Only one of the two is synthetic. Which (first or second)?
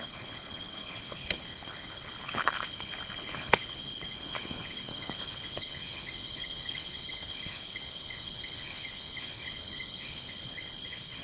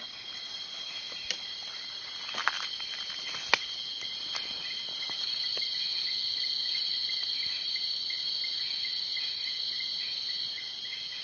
first